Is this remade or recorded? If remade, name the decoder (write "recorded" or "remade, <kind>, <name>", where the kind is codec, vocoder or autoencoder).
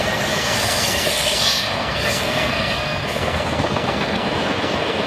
remade, codec, SNAC